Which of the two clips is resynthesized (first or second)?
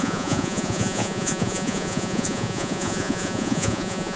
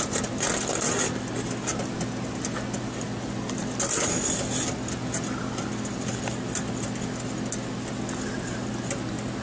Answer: first